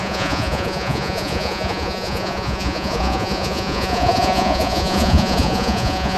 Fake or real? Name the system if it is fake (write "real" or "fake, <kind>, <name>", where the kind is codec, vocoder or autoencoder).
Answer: fake, vocoder, Vocos